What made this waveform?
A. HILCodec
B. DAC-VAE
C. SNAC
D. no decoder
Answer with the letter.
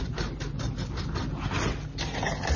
D